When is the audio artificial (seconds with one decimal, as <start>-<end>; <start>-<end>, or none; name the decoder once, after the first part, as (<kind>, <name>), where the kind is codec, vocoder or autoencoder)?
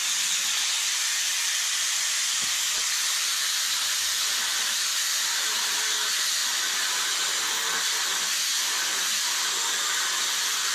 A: none